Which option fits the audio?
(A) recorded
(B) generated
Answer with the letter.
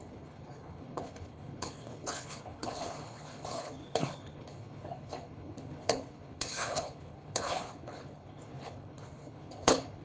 B